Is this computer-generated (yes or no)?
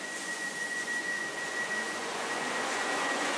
yes